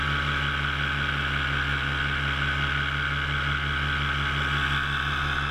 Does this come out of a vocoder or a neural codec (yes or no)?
no